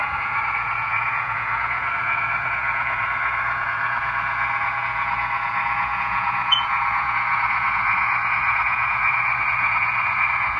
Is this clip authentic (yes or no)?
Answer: no